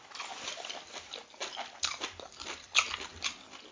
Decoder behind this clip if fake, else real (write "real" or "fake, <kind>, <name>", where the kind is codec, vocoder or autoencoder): real